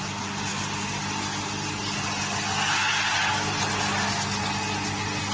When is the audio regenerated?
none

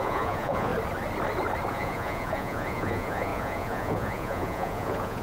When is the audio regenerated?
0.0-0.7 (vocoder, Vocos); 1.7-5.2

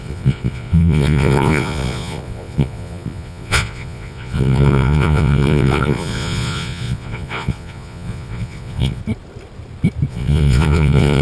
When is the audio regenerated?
0.0-9.0 (vocoder, Vocos); 10.1-11.2

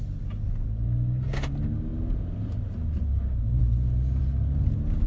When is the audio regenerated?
none

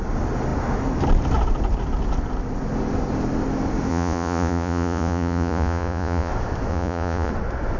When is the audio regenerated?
3.9-6.3 (vocoder, Vocos); 6.7-7.3

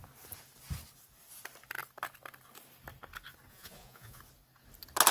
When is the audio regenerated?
3.5-4.2 (vocoder, Vocos)